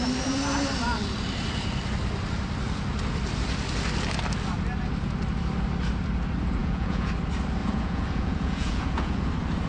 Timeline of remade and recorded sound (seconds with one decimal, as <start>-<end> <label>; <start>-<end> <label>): 0.0-6.6 recorded; 6.6-7.1 remade; 7.1-7.6 recorded; 7.6-9.2 remade; 9.2-9.7 recorded